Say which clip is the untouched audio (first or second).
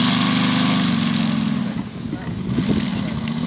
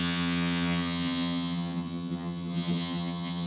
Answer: first